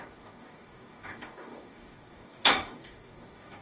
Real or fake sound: fake